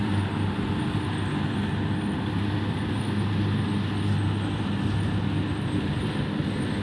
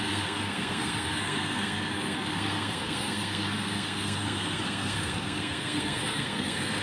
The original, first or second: first